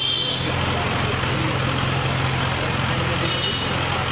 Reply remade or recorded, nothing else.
recorded